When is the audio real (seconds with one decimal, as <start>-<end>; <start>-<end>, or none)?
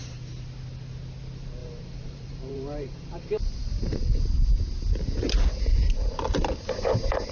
0.0-1.6; 4.2-7.3